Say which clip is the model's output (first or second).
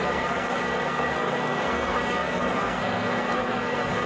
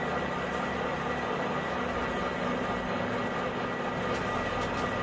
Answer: first